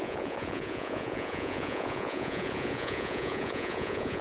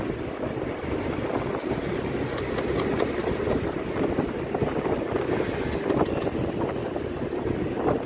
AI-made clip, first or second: first